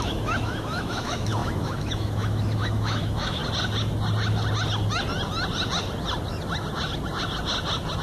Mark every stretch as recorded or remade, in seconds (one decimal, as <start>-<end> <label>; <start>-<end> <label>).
0.0-3.4 remade; 3.4-8.0 recorded